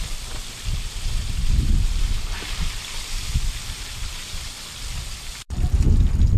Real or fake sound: fake